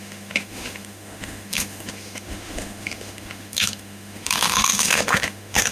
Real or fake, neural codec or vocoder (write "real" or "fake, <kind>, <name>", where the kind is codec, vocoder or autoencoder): fake, autoencoder, DAC-VAE